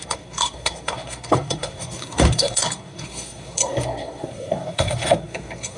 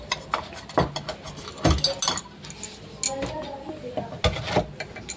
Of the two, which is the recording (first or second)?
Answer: second